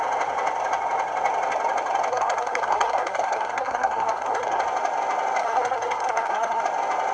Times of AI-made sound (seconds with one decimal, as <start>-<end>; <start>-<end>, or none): 2.1-4.6; 5.4-6.6